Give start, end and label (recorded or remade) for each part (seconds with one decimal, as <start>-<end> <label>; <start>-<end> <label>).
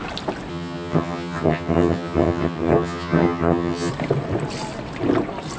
0.0-0.5 recorded; 0.5-3.9 remade; 3.9-5.6 recorded